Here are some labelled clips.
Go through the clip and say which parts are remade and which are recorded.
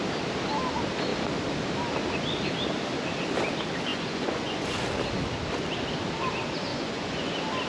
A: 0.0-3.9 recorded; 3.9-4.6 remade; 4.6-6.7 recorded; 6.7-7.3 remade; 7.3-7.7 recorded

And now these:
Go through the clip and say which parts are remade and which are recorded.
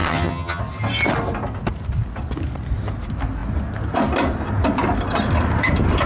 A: 0.0-0.6 remade; 0.6-6.1 recorded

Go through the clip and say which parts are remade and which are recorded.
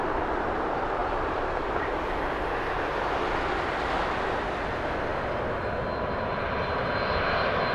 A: 0.0-1.0 recorded; 1.0-2.0 remade; 2.0-7.7 recorded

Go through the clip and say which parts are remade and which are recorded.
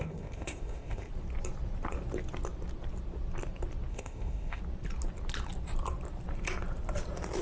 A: 0.0-1.1 remade; 1.1-3.9 recorded; 3.9-4.6 remade; 4.6-7.4 recorded